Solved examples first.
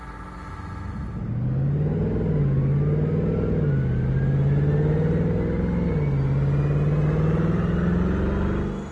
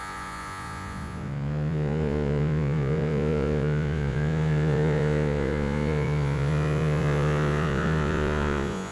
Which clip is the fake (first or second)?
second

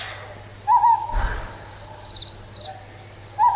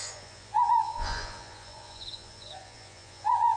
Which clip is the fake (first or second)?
second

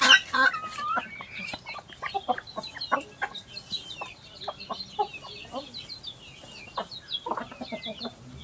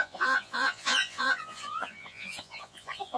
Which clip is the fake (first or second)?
second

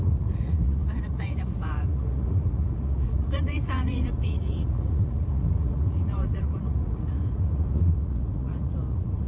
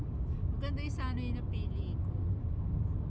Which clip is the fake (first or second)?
first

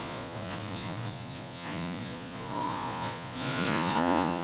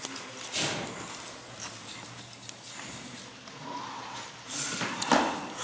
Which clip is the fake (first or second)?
first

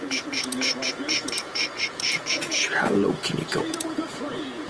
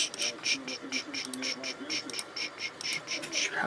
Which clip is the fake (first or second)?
first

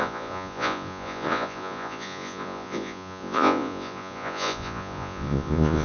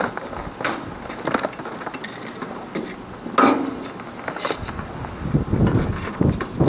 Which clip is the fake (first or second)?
first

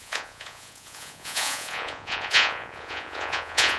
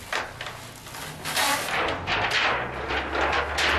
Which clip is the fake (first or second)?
first